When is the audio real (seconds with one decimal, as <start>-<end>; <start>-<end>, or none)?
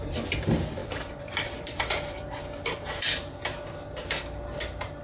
0.0-0.8; 3.8-5.0